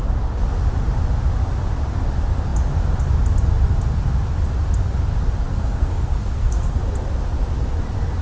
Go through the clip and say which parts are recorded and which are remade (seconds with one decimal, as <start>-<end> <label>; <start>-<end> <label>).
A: 0.0-5.5 recorded; 5.5-6.8 remade; 6.8-8.2 recorded